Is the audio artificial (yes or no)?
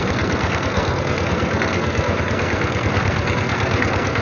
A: yes